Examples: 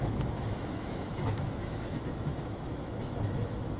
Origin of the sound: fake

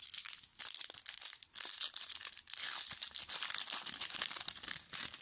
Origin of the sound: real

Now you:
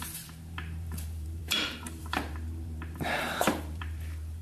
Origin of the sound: fake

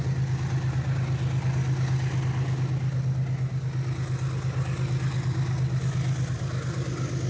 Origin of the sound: real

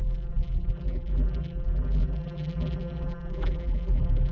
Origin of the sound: fake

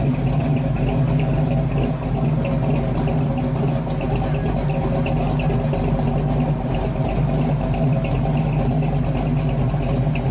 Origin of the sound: real